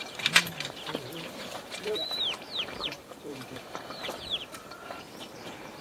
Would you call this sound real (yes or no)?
no